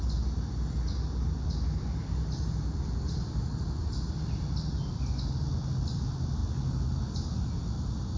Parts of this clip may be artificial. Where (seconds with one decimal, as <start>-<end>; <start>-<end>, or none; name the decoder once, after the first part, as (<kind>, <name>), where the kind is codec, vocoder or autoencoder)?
none